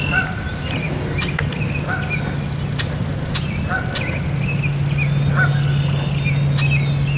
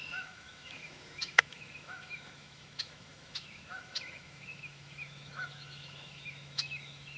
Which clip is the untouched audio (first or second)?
first